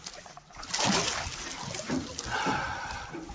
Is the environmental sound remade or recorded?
recorded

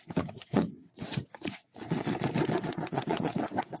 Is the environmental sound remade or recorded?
remade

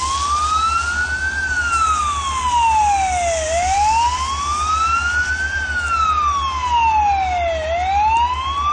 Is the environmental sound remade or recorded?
recorded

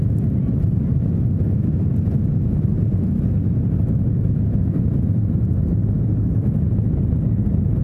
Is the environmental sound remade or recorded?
recorded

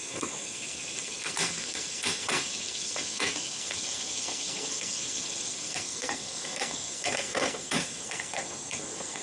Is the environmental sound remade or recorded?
remade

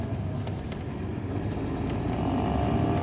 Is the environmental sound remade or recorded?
recorded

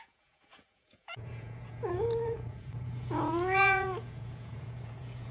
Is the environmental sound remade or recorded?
remade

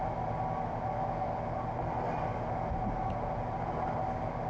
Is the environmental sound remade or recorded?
recorded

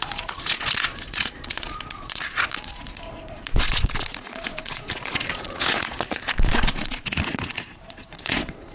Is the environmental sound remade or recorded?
remade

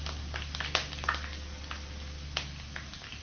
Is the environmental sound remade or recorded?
recorded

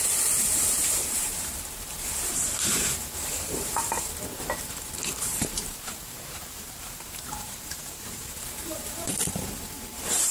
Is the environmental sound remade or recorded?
remade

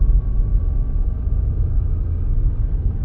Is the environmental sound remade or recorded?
recorded